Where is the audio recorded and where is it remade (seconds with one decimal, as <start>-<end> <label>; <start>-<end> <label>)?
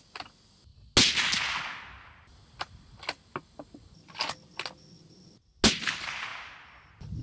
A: 0.0-7.2 recorded